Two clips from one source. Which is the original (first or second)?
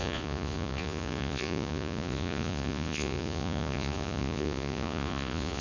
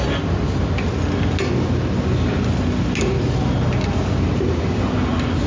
second